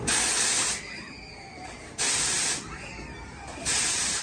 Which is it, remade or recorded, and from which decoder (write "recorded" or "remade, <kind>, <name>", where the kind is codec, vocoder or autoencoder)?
recorded